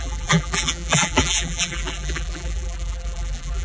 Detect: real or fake fake